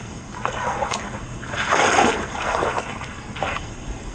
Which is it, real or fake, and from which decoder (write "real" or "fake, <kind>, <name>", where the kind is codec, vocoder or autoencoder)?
fake, codec, SNAC